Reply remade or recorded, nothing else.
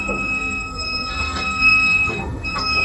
remade